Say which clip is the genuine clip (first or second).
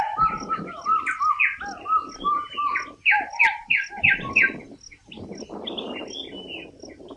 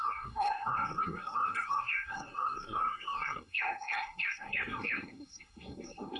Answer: first